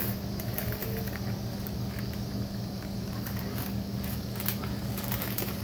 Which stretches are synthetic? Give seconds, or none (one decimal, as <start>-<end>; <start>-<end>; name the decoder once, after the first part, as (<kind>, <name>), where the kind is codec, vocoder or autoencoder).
0.0-5.6 (codec, DAC)